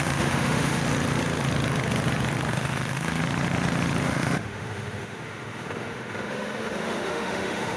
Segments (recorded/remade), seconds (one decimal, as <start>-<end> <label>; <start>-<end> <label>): 0.0-0.8 remade; 0.8-2.5 recorded; 2.5-3.2 remade; 3.2-4.0 recorded; 4.0-7.8 remade